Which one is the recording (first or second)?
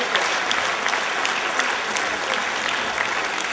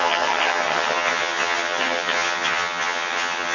first